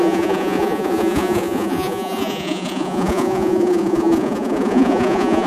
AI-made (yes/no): yes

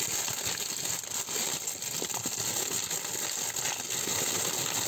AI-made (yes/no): no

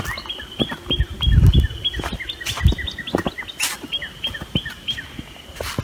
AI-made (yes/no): no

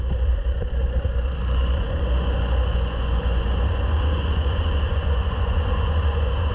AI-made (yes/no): yes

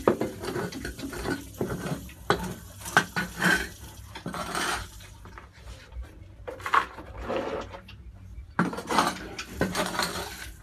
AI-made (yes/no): yes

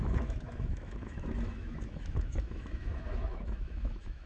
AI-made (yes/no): yes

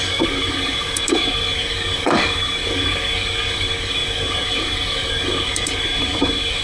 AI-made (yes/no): yes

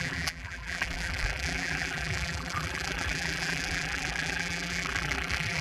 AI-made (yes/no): yes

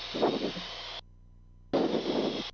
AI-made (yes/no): no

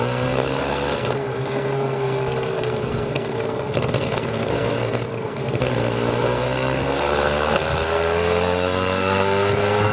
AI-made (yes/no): yes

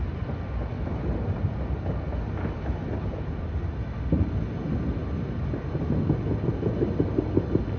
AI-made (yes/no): no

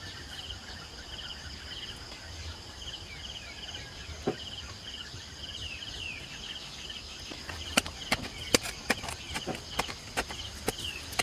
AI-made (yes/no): no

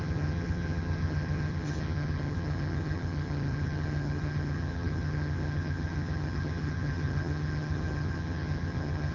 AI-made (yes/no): yes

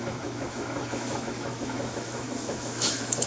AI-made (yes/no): yes